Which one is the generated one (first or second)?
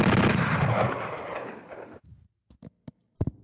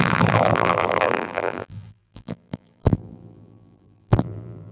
second